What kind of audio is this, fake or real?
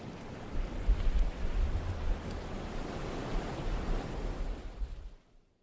real